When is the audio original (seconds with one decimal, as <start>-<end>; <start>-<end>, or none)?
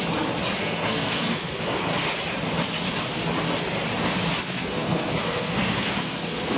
0.0-0.6; 1.9-4.4